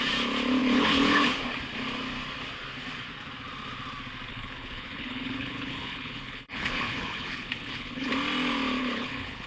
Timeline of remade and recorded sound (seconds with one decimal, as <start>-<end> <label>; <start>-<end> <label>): 0.0-0.6 recorded; 0.6-1.4 remade; 1.4-4.3 recorded; 4.3-8.1 remade; 8.1-8.8 recorded; 8.8-9.5 remade